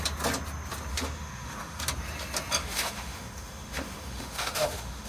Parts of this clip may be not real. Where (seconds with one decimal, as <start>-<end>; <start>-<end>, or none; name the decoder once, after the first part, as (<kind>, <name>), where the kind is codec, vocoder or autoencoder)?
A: 0.9-1.8 (autoencoder, DAC-VAE); 2.6-5.1